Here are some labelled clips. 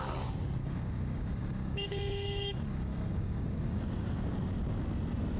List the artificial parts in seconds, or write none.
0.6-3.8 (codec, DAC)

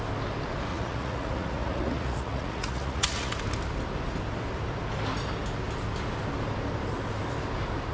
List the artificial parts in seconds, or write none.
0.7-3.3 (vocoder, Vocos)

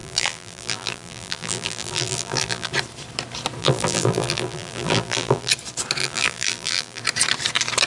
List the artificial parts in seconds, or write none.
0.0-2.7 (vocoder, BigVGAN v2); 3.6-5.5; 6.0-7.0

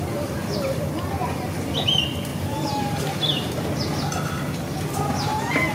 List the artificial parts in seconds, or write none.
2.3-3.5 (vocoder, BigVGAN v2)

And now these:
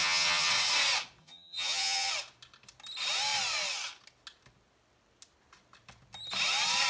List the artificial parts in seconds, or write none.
0.0-0.5 (vocoder, HiFi-GAN); 1.2-2.1

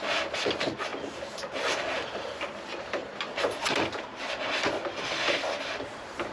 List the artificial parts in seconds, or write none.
none

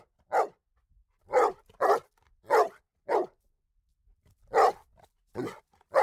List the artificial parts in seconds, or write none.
1.0-1.8 (vocoder, BigVGAN v2); 2.9-3.4

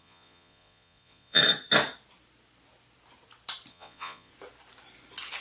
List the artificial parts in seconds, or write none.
0.0-1.4 (vocoder, Vocos); 3.7-4.3